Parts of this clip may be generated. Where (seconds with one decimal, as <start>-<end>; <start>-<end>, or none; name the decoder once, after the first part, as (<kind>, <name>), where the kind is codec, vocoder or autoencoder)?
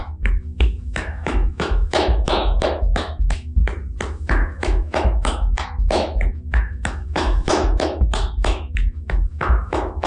0.0-3.6 (autoencoder, DAC-VAE); 4.1-10.1